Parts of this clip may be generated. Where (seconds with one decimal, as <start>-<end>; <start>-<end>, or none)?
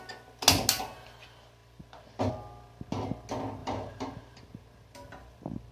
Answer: 3.6-4.4